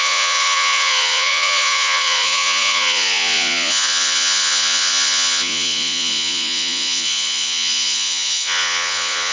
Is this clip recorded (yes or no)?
no